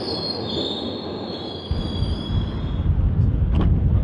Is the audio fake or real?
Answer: real